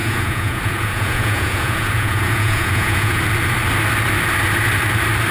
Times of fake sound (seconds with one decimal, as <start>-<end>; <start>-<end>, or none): 0.0-3.2